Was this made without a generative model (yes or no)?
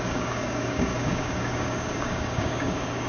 no